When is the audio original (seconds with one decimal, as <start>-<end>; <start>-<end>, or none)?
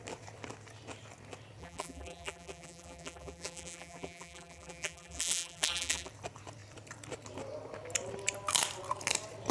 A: 0.0-1.6; 6.1-9.5